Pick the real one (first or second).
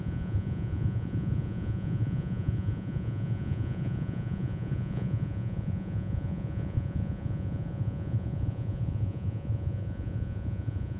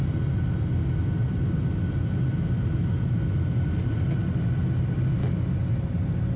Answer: second